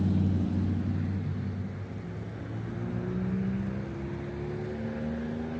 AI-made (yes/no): no